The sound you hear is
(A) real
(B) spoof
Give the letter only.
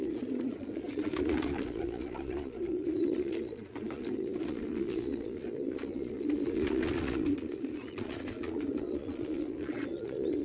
B